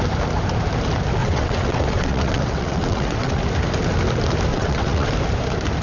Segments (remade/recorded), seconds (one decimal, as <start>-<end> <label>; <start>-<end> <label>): 0.0-1.2 recorded; 1.2-3.4 remade; 3.4-4.5 recorded; 4.5-5.1 remade; 5.1-5.8 recorded